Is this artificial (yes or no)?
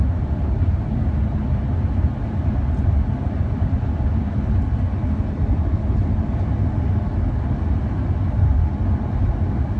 no